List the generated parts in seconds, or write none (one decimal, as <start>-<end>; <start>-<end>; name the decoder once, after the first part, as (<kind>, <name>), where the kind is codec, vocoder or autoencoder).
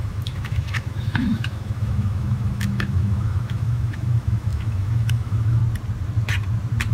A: 0.0-5.6 (autoencoder, DAC-VAE)